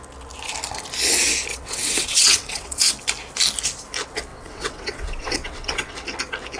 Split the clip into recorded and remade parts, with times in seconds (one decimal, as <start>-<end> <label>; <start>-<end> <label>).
0.0-1.5 recorded; 1.5-2.9 remade; 2.9-4.3 recorded; 4.3-5.9 remade; 5.9-6.6 recorded